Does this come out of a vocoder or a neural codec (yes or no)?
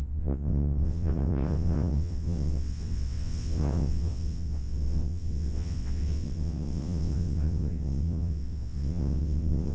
yes